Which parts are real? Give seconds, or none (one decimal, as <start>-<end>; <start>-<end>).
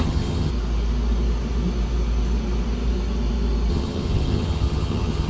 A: 0.5-3.7